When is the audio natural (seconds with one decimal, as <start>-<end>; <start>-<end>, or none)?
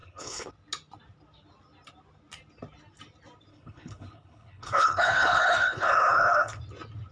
0.5-3.5; 6.6-7.1